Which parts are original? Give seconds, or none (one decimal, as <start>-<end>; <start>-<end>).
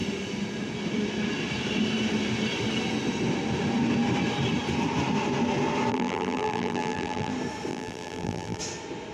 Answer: 0.0-5.9; 7.3-7.7; 8.6-9.1